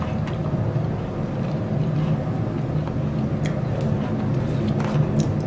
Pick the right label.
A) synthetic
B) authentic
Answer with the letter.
B